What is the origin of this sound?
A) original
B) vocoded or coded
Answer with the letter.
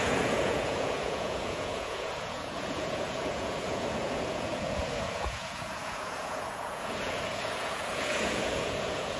B